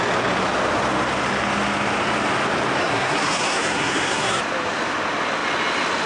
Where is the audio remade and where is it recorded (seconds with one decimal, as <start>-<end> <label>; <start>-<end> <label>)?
0.0-2.8 recorded; 2.8-4.4 remade; 4.4-6.1 recorded